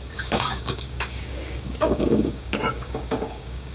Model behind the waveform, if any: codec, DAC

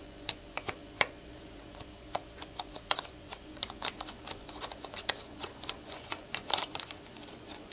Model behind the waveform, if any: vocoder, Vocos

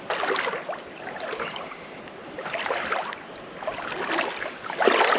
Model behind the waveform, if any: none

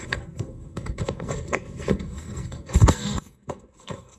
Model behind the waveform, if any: codec, SNAC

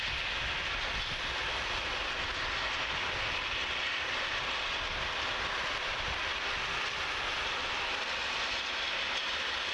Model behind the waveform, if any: none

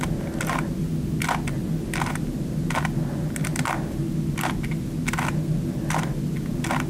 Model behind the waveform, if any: none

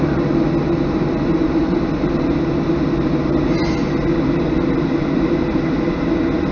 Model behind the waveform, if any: none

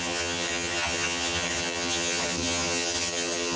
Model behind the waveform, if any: vocoder, HiFi-GAN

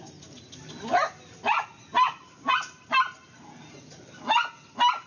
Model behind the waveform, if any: none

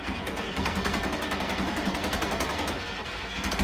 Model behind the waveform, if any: codec, SNAC